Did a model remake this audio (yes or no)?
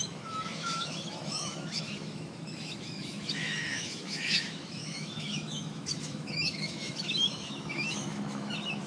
yes